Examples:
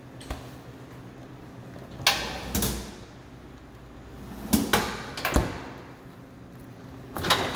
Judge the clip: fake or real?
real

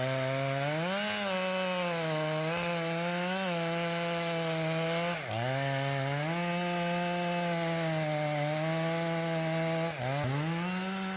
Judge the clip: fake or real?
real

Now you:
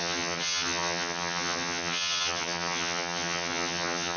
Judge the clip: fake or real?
fake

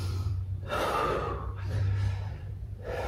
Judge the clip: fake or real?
fake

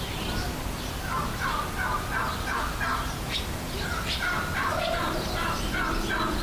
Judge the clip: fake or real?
real